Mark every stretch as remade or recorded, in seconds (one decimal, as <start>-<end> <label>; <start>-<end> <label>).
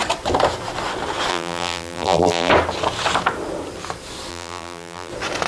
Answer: 0.0-1.3 recorded; 1.3-2.5 remade; 2.5-4.3 recorded; 4.3-5.1 remade; 5.1-5.5 recorded